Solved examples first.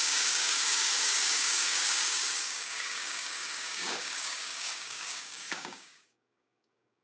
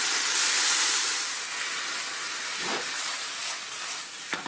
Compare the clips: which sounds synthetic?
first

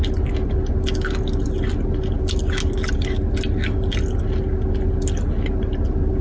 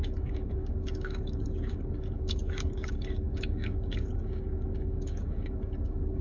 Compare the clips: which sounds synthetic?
second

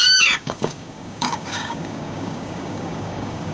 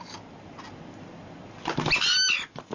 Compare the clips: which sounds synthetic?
first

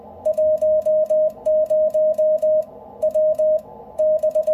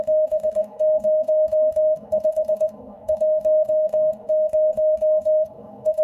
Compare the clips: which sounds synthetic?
second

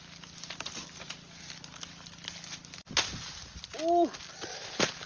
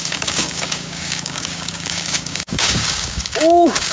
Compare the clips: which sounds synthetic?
second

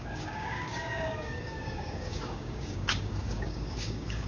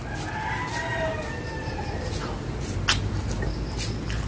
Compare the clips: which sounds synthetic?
first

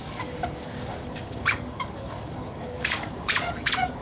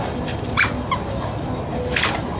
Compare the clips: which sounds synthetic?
first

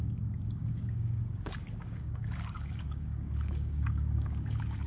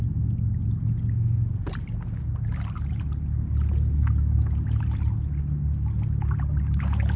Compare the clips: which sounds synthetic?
first